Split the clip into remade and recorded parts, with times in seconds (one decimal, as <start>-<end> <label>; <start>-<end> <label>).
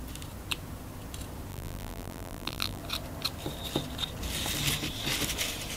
0.0-1.5 recorded; 1.5-2.8 remade; 2.8-5.8 recorded